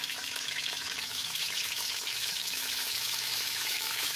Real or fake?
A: fake